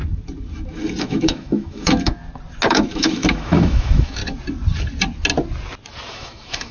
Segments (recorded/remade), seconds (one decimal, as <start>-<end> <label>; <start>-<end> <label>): 0.0-1.0 recorded; 1.0-2.2 remade; 2.2-2.7 recorded; 2.7-4.2 remade; 4.2-6.1 recorded; 6.1-6.7 remade